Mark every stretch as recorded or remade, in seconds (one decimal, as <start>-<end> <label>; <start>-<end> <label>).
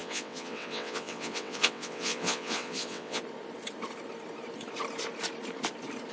0.0-3.2 remade; 3.2-6.1 recorded